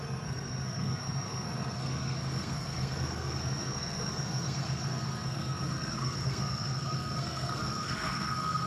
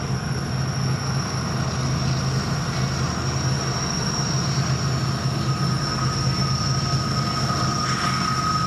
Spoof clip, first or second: first